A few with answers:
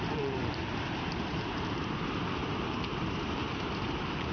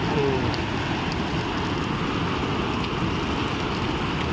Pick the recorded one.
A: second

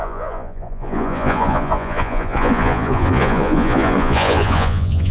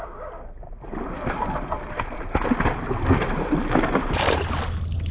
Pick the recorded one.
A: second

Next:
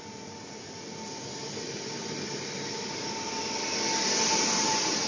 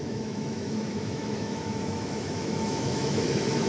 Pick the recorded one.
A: first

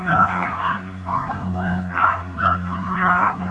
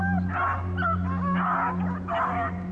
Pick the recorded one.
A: second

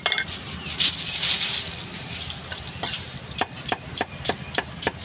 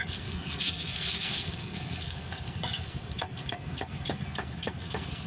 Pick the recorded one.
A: first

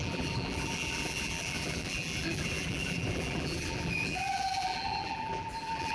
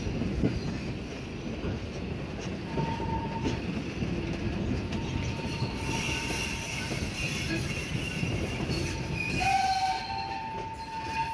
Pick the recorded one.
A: second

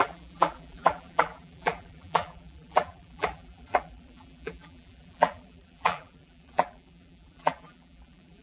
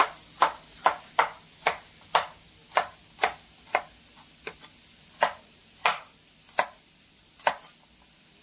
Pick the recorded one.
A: second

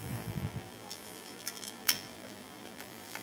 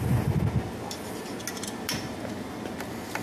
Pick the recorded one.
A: second